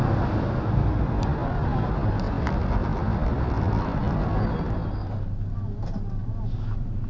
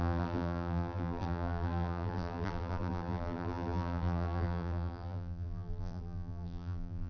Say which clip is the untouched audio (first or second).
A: first